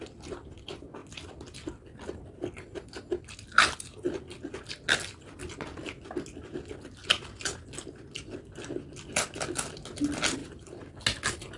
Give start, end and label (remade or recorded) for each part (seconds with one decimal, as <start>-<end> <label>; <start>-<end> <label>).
0.0-10.4 recorded; 10.4-10.9 remade; 10.9-11.6 recorded